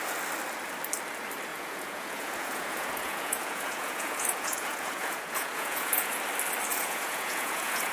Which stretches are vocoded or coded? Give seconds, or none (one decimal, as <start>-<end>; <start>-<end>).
1.5-6.2; 6.7-7.9